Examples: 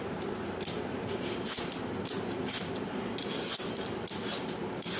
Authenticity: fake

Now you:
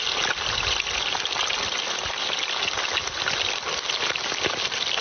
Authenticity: real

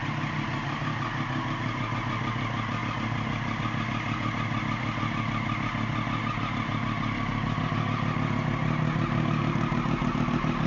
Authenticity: real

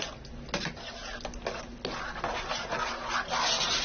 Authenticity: real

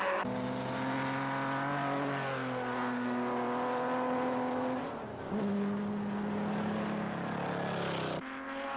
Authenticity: real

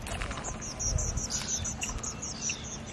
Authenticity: real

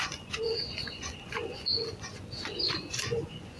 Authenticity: fake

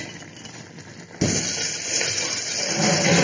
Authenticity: real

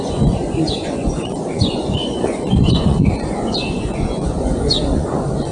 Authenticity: fake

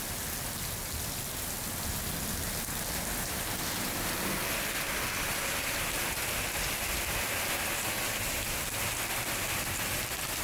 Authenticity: real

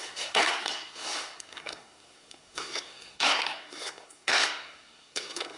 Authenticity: fake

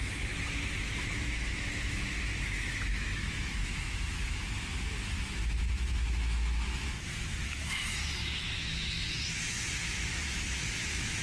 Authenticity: fake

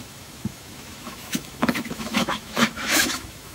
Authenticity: fake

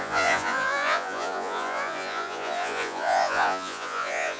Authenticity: fake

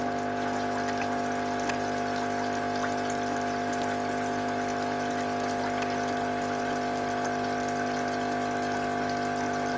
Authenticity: real